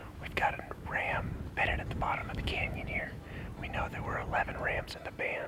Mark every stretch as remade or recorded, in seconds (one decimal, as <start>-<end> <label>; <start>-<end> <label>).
0.0-1.3 remade; 1.3-2.2 recorded; 2.2-3.2 remade; 3.2-5.5 recorded